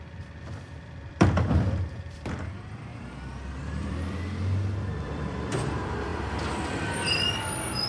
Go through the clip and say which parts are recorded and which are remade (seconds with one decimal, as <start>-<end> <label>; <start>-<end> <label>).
0.0-2.9 remade; 2.9-3.6 recorded; 3.6-7.9 remade